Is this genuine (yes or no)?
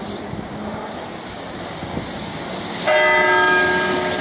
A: yes